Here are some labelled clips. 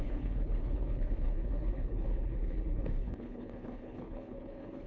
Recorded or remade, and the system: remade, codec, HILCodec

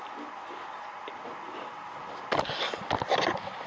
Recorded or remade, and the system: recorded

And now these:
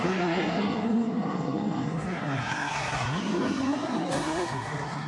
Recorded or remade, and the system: remade, codec, SNAC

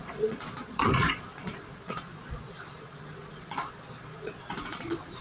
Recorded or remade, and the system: remade, vocoder, Vocos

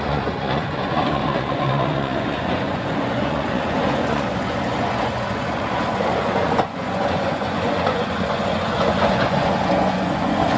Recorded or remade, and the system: remade, vocoder, Vocos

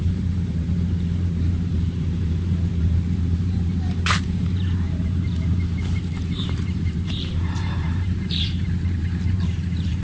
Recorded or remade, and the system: remade, vocoder, BigVGAN v2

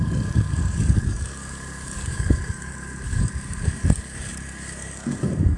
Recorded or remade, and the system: remade, codec, DAC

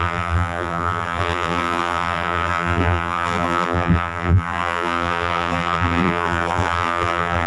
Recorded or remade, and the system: remade, vocoder, BigVGAN v2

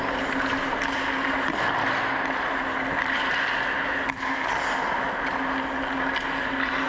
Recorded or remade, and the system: recorded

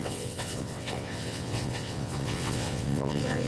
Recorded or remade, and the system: remade, vocoder, WaveNeXt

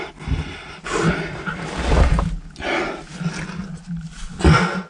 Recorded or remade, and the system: recorded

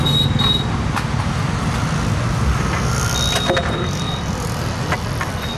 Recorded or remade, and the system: recorded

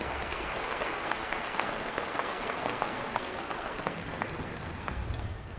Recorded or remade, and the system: remade, codec, SNAC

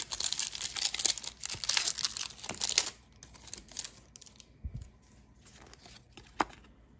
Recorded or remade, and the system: recorded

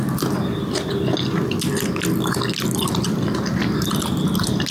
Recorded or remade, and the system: recorded